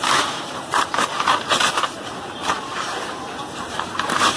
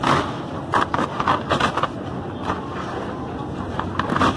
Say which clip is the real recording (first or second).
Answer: second